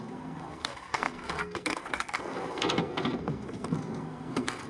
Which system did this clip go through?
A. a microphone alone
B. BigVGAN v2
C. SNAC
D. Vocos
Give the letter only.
C